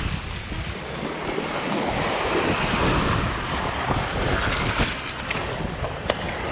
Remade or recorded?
recorded